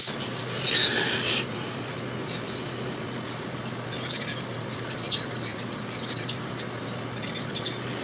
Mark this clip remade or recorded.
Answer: recorded